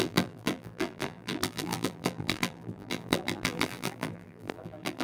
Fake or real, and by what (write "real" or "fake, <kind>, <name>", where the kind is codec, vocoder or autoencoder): fake, vocoder, BigVGAN v2